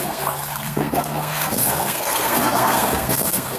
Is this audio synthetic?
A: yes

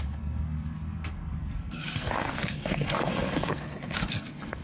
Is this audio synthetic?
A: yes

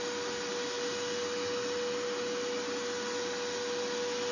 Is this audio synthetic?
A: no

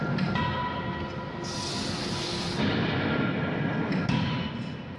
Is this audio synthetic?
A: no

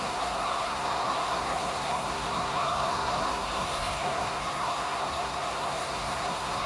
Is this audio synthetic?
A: yes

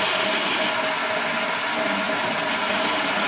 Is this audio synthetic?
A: no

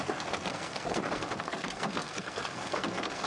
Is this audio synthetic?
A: yes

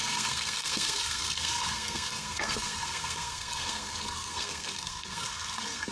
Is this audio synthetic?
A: yes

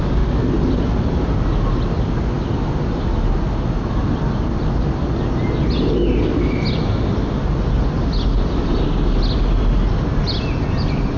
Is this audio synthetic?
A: no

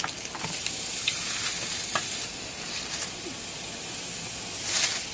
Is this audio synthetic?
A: no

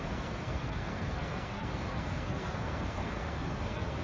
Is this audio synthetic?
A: yes